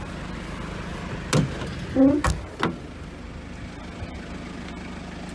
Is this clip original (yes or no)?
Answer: yes